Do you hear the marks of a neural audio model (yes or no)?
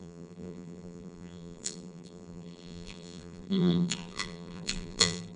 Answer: yes